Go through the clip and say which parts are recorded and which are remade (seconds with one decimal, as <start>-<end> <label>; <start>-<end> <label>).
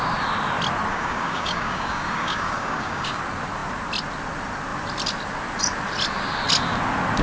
0.0-0.9 recorded; 0.9-3.2 remade; 3.2-7.2 recorded